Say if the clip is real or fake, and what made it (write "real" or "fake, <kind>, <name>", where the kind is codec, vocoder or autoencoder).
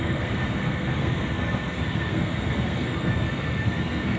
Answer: fake, codec, SNAC